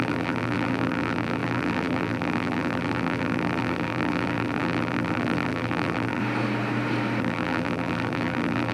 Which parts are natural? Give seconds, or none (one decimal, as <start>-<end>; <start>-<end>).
6.2-7.2